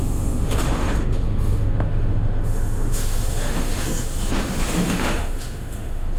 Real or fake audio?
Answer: fake